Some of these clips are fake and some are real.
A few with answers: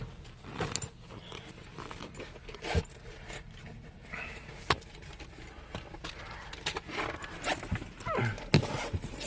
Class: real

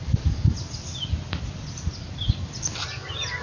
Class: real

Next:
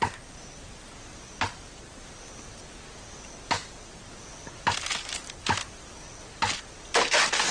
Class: real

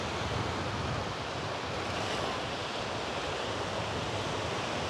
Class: real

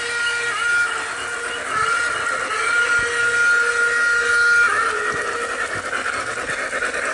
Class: real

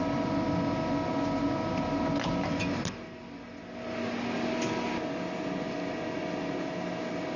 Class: real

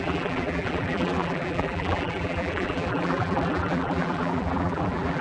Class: fake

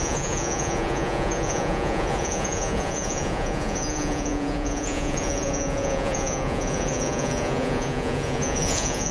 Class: fake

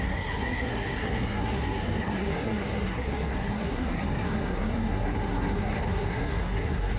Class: fake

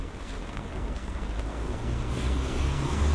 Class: fake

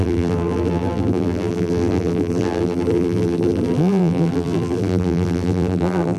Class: fake